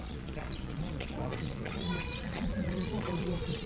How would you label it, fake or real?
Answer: fake